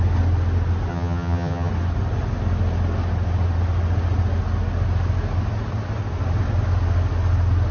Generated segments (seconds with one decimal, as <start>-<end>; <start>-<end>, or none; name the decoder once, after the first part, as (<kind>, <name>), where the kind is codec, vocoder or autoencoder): 0.9-1.7 (vocoder, HiFi-GAN)